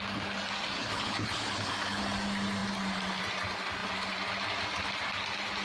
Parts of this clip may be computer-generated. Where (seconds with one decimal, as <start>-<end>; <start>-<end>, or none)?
0.8-2.0